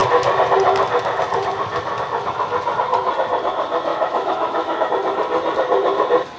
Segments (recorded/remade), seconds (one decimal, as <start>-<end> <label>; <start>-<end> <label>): 0.0-3.9 recorded; 3.9-4.9 remade; 4.9-6.4 recorded